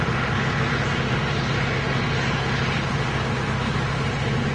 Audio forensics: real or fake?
real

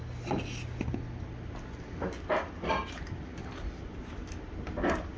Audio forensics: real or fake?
real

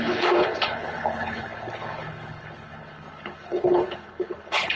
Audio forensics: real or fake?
fake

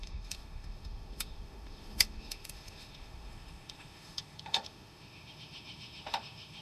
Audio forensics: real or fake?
fake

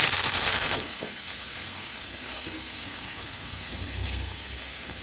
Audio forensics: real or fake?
fake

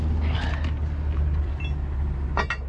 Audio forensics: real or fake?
real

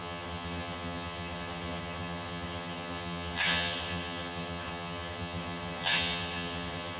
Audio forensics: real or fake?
fake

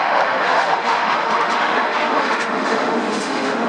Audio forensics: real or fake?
fake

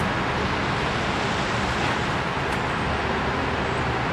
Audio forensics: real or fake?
real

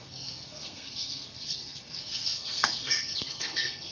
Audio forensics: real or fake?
fake